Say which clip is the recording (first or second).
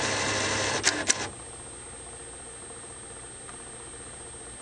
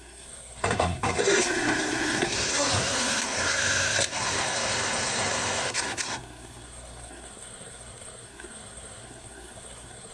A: first